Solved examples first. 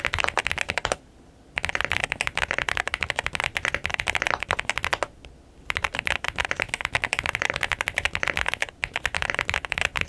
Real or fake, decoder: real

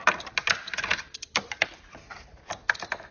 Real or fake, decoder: real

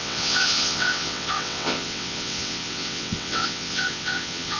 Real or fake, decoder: fake, vocoder, WaveNeXt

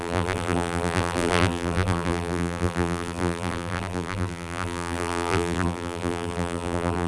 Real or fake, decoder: fake, vocoder, BigVGAN v2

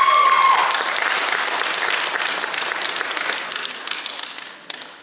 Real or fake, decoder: real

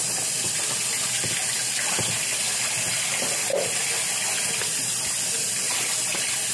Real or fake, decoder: real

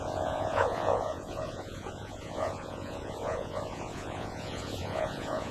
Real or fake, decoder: fake, vocoder, Vocos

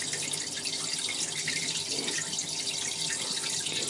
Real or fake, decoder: real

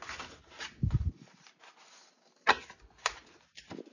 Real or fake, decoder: real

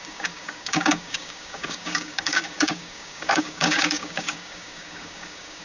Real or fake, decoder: fake, codec, DAC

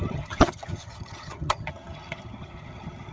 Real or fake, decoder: fake, vocoder, HiFi-GAN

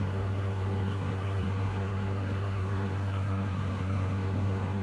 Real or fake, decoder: fake, codec, SNAC